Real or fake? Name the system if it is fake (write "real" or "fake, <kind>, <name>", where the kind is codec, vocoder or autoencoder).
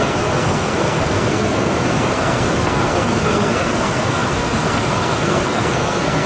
fake, codec, SNAC